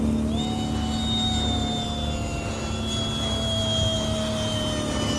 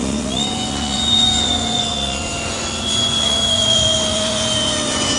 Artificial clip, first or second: second